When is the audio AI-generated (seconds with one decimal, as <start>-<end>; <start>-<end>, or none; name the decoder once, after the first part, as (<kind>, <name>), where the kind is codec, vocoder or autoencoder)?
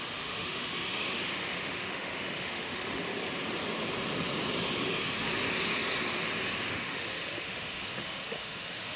0.0-3.0 (autoencoder, DAC-VAE); 6.7-9.0